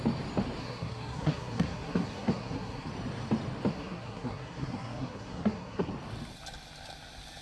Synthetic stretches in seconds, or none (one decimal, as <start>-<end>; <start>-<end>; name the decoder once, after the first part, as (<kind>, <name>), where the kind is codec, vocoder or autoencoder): 0.6-2.9 (codec, SNAC); 3.7-5.9